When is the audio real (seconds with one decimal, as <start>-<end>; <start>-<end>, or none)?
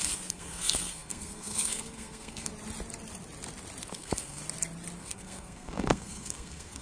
2.5-3.9; 4.4-5.0